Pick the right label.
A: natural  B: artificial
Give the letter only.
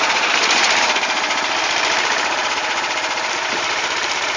B